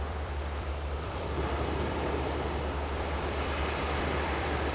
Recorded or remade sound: remade